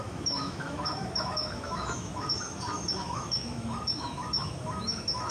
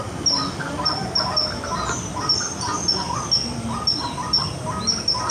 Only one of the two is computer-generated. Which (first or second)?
first